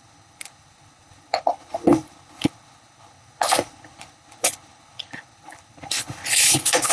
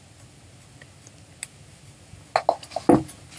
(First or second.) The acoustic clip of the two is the second